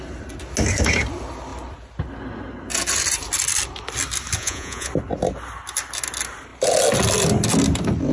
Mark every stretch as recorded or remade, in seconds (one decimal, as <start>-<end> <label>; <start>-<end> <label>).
0.0-4.4 recorded; 4.4-4.9 remade; 4.9-8.1 recorded